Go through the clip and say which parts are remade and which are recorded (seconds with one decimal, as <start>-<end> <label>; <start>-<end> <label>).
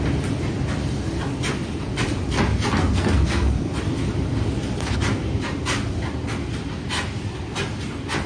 0.0-2.8 recorded; 2.8-3.7 remade; 3.7-8.3 recorded